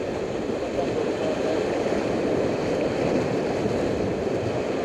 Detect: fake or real real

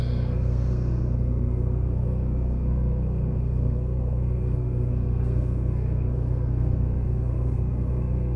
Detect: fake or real fake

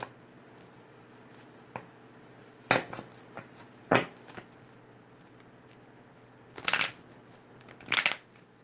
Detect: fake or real real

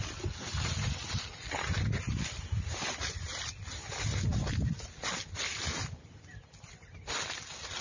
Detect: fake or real real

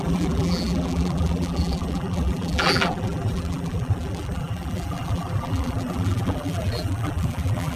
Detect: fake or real fake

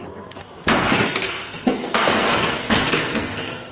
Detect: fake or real fake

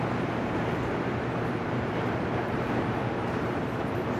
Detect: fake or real fake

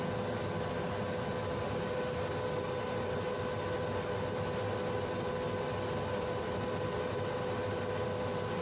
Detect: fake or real real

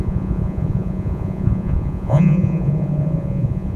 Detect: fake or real fake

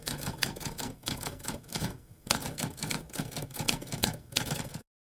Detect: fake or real fake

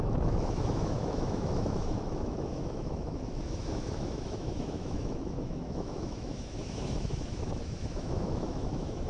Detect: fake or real fake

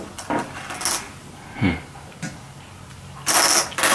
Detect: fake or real real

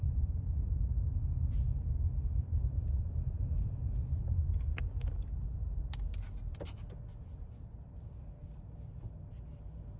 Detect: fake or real fake